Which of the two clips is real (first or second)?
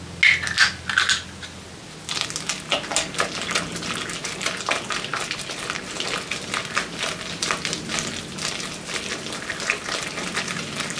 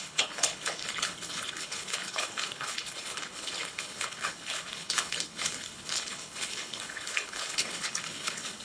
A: first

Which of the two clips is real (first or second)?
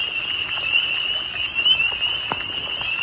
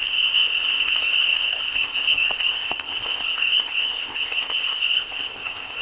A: first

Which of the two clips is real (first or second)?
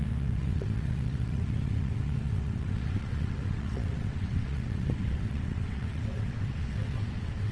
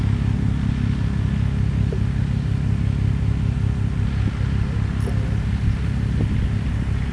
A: second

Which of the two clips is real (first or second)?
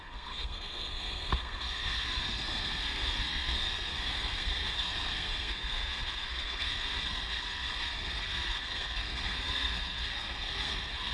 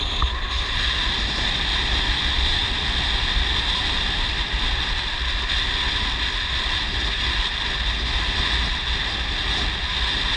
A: second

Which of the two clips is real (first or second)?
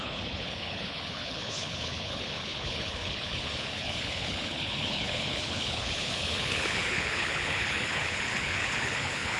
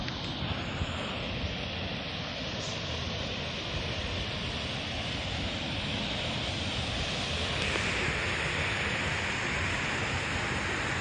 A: second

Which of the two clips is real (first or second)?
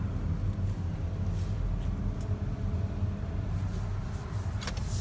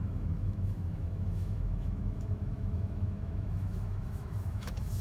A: first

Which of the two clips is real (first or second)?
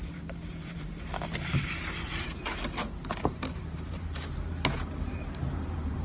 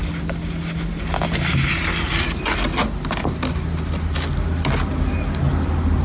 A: second